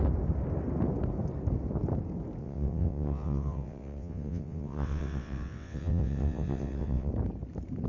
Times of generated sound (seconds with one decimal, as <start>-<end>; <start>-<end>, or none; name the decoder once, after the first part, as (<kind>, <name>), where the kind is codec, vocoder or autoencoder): 2.4-7.1 (vocoder, WaveNeXt)